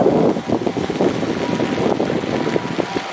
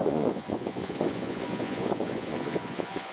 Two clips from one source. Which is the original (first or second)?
first